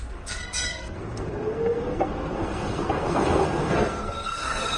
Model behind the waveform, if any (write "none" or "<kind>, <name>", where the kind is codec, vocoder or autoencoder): codec, SNAC